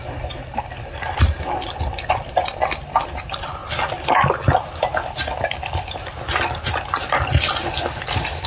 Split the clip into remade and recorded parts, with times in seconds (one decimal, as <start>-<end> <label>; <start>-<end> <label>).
0.0-8.5 recorded